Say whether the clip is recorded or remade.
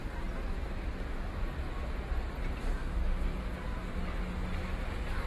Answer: recorded